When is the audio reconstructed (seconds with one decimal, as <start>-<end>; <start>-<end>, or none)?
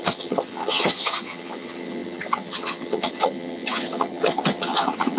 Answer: 0.0-5.2